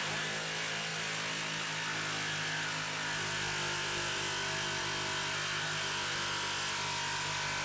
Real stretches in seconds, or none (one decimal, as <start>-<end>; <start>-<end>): 0.0-7.6

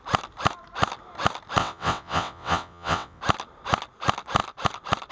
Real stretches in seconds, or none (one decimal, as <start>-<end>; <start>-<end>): 0.0-1.6; 3.2-5.1